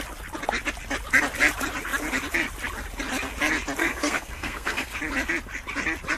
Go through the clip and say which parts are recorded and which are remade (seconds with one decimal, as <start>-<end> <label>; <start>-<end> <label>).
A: 0.0-3.8 recorded; 3.8-5.0 remade; 5.0-6.2 recorded